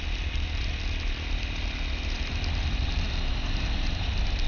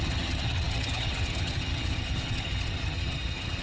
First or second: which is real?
first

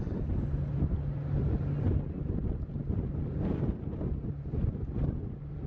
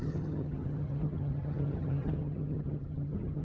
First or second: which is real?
first